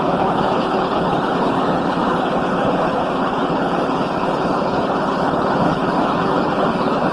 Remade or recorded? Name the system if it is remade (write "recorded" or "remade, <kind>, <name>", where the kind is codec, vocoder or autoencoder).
remade, codec, HILCodec